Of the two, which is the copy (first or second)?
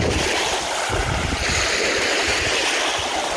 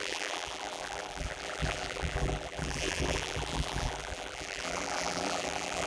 second